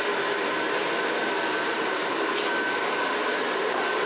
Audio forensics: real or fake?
real